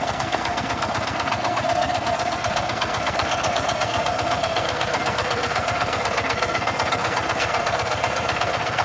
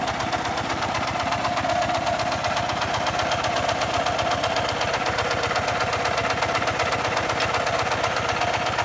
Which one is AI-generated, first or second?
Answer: first